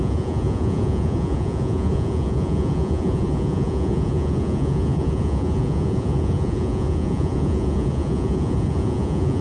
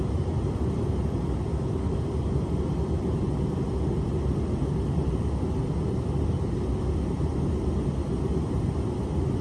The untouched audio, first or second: second